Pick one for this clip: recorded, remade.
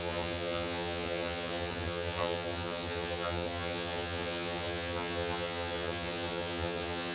remade